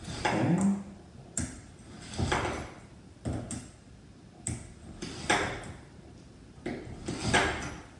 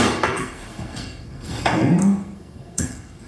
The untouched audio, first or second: first